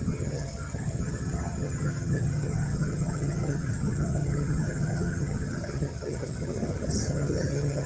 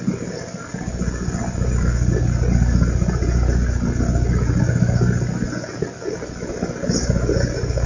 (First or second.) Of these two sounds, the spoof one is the first